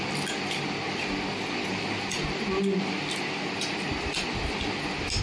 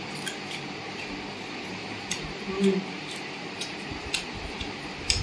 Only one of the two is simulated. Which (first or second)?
second